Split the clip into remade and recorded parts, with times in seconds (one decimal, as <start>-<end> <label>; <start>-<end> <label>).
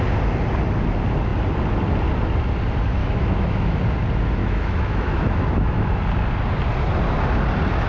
0.0-3.0 recorded; 3.0-3.8 remade; 3.8-4.4 recorded; 4.4-6.0 remade; 6.0-7.9 recorded